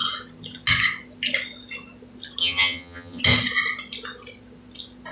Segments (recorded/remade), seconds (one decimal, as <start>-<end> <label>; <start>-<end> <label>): 0.0-2.4 recorded; 2.4-3.2 remade; 3.2-5.1 recorded